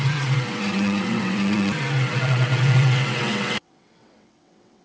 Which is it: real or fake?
fake